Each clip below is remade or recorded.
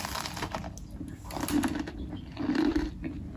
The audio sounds recorded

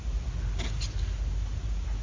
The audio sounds recorded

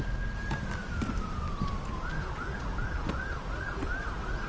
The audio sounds recorded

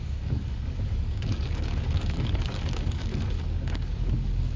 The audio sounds remade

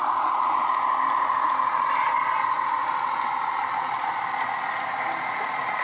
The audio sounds recorded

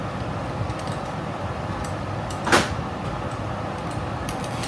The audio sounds recorded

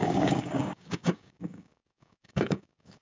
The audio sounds remade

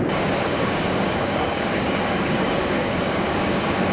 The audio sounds remade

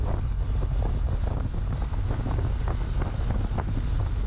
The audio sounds recorded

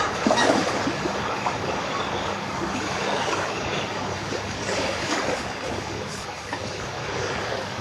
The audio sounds remade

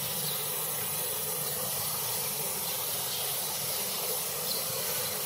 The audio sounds recorded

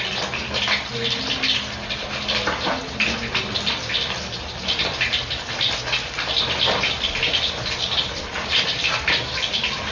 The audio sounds recorded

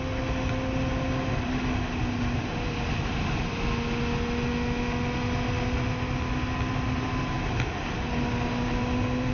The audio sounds recorded